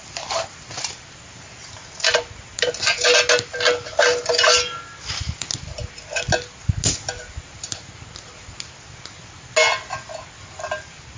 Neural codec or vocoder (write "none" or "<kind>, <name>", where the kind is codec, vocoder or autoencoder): none